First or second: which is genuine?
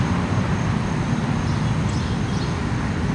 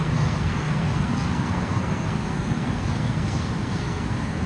first